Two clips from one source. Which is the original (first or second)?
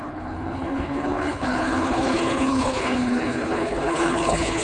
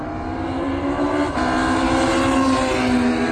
second